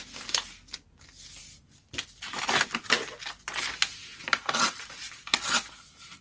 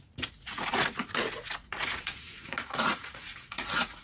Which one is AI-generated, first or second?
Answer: second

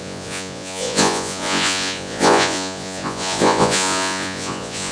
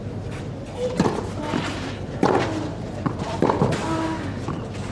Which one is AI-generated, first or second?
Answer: first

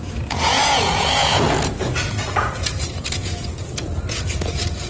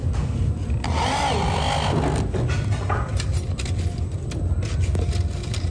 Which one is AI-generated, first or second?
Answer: first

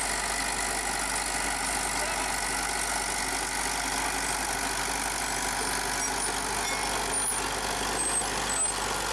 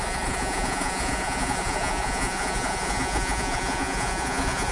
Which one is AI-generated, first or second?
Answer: second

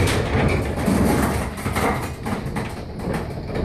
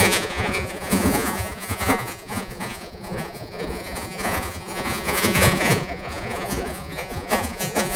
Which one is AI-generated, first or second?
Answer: second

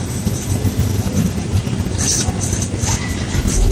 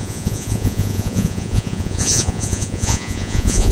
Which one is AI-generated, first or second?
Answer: second